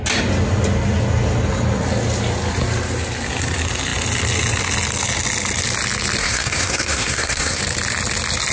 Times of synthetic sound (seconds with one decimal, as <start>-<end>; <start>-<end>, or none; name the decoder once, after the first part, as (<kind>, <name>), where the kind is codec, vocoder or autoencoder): 6.2-7.6 (codec, SNAC)